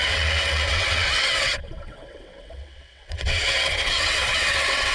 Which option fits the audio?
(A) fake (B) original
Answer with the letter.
A